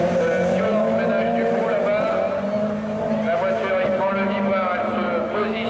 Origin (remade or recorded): recorded